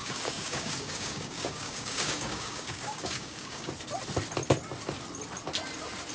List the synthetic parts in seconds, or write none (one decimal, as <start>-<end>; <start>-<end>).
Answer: 0.0-3.7